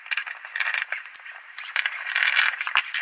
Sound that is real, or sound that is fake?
fake